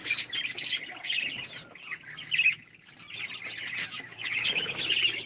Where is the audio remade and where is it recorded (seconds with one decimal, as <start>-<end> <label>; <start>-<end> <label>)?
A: 0.0-3.8 recorded; 3.8-4.8 remade; 4.8-5.2 recorded